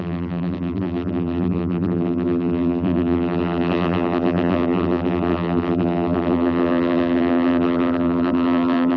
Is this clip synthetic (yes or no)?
yes